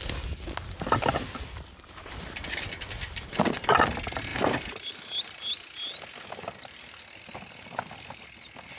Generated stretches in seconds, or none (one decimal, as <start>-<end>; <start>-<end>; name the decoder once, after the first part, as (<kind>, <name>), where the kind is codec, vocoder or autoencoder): 4.3-4.9 (vocoder, BigVGAN v2)